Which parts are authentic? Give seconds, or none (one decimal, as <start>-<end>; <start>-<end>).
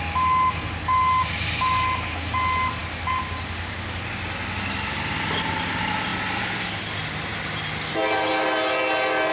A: 0.0-9.3